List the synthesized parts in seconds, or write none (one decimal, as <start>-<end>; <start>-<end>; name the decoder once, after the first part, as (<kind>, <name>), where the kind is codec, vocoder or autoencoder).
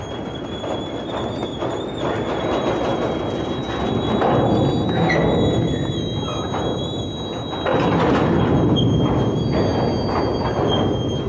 none